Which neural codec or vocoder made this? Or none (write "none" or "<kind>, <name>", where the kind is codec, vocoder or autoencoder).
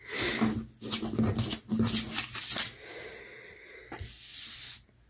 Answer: none